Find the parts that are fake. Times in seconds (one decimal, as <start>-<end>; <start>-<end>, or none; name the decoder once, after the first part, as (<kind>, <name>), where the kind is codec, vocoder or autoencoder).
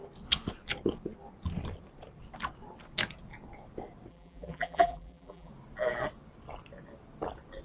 4.1-5.5 (vocoder, BigVGAN v2)